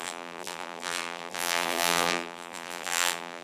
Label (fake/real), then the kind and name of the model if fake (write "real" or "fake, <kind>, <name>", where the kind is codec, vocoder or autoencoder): fake, vocoder, BigVGAN v2